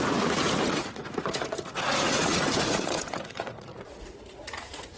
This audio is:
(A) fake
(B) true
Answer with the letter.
A